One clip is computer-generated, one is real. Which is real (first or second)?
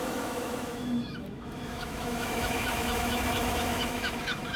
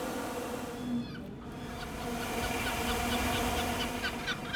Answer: second